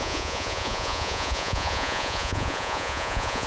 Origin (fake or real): fake